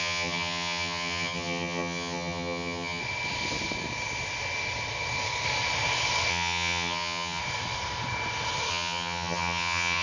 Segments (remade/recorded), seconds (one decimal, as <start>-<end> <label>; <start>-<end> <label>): 0.0-3.0 remade; 3.0-6.3 recorded; 6.3-7.4 remade; 7.4-8.7 recorded; 8.7-10.0 remade